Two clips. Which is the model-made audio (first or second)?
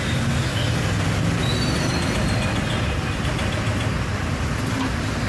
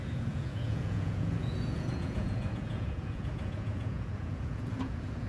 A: second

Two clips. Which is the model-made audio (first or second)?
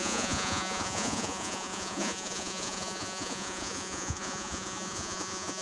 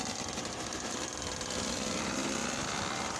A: first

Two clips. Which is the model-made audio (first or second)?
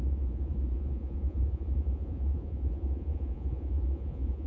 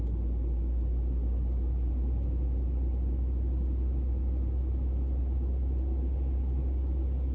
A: first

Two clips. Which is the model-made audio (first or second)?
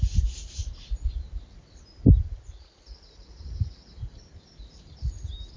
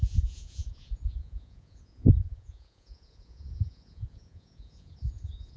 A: second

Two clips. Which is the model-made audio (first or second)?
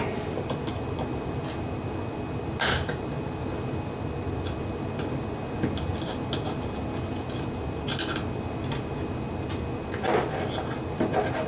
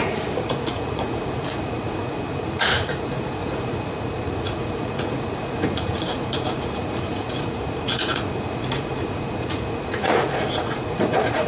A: second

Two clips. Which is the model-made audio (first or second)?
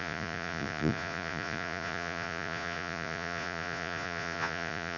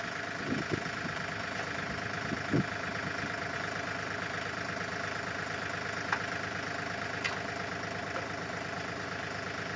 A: first